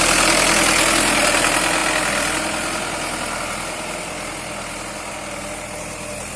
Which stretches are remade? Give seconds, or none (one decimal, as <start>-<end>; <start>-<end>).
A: none